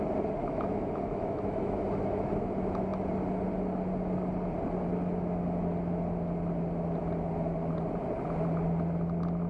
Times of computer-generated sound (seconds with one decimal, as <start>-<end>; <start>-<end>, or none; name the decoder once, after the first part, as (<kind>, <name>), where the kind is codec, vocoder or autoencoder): 0.4-2.3 (autoencoder, DAC-VAE)